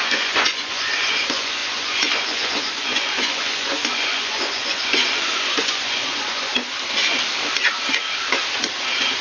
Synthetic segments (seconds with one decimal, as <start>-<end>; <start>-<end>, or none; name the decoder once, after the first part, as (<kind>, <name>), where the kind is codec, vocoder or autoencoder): 0.0-6.5 (vocoder, Vocos)